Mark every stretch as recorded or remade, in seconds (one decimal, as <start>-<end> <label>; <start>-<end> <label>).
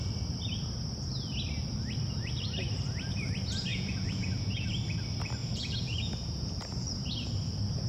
0.0-3.7 recorded; 3.7-4.7 remade; 4.7-5.4 recorded; 5.4-7.3 remade; 7.3-7.9 recorded